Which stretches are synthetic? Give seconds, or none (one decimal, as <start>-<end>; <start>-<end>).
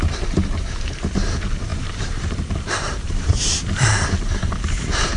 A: 0.0-5.2